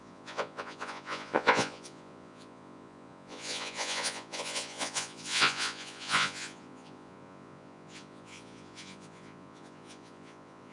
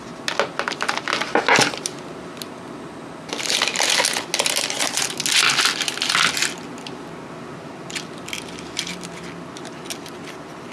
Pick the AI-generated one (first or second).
first